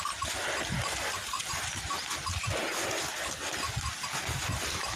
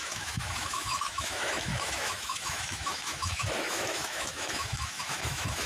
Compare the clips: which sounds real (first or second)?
first